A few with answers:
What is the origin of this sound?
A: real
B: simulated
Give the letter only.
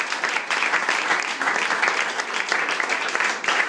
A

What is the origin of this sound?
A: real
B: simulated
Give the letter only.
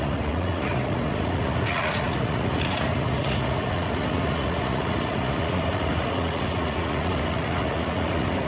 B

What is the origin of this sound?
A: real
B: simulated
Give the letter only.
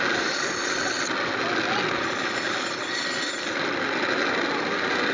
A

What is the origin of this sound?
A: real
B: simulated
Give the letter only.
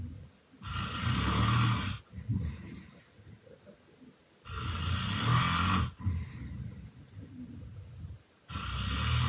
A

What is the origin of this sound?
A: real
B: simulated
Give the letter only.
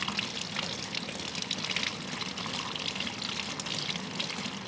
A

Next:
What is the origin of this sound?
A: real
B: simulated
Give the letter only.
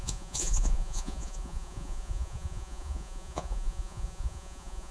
B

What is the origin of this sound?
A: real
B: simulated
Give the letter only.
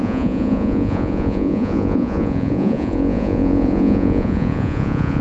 B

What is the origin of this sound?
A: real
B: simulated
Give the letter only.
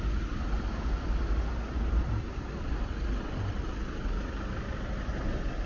A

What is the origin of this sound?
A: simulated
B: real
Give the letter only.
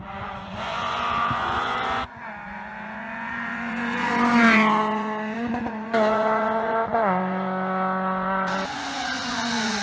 A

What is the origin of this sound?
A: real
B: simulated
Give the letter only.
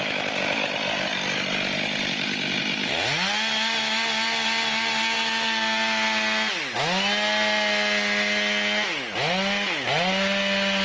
A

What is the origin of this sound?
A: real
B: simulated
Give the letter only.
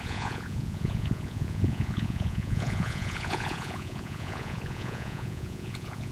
B